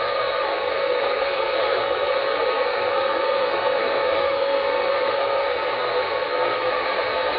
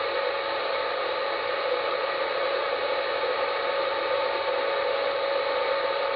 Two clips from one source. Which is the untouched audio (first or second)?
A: second